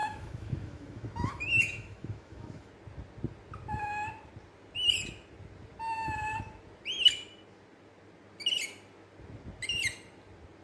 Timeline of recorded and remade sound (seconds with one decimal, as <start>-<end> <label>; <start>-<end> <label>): 0.0-2.7 remade; 2.7-10.6 recorded